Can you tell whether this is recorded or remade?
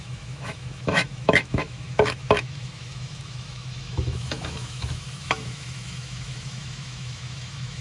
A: remade